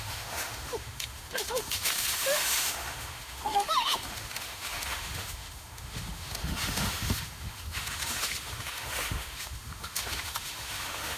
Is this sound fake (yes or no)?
yes